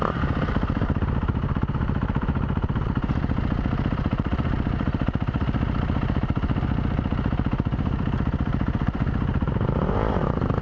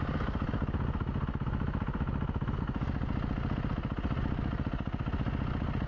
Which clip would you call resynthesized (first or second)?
first